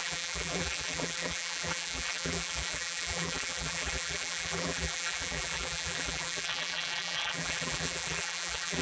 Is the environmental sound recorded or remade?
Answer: remade